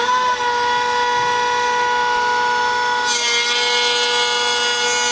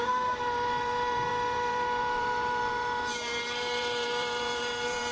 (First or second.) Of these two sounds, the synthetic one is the second